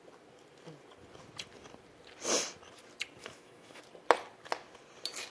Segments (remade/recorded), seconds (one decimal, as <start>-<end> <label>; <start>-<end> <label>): 0.0-3.2 recorded; 3.2-3.8 remade; 3.8-5.3 recorded